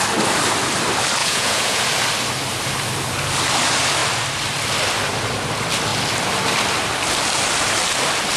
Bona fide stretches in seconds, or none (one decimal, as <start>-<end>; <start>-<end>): 0.0-1.2; 1.8-8.4